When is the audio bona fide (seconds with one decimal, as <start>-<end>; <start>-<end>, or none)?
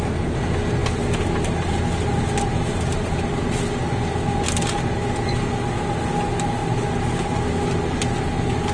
0.0-8.7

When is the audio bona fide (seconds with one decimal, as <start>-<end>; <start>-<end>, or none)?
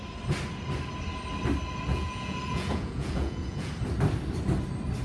0.0-1.9; 3.7-5.0